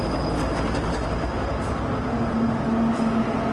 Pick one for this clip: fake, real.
real